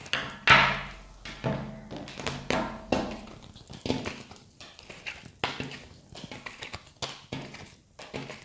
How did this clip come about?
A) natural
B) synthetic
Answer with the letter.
A